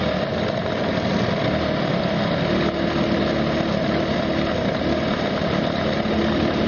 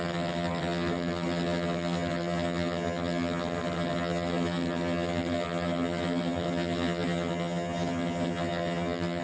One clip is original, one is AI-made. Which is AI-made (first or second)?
second